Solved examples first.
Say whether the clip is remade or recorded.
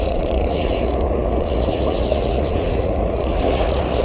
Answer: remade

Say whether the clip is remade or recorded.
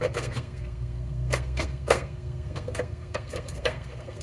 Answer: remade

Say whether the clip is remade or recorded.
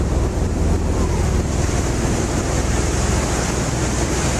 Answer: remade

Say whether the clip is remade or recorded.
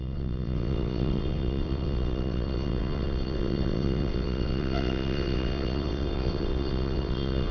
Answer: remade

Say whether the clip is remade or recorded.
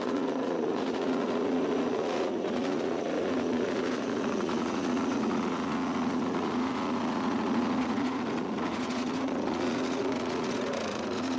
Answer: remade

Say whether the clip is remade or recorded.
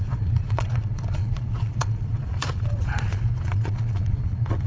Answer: remade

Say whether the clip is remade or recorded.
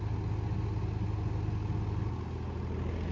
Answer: recorded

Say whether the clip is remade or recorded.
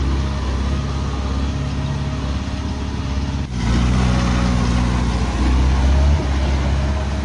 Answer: recorded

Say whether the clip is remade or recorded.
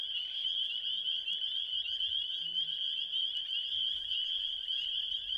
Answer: recorded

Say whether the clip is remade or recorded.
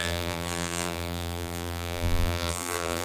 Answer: remade